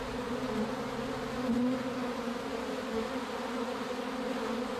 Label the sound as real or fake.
real